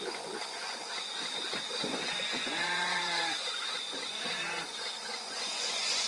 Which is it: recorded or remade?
remade